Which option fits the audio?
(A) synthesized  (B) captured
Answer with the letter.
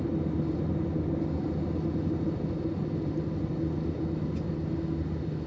B